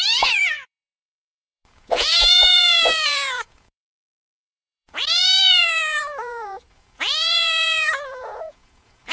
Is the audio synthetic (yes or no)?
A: yes